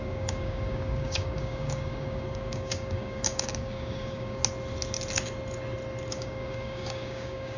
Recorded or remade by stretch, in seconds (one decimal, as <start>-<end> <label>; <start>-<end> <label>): 0.0-4.4 remade; 4.4-6.1 recorded; 6.1-7.6 remade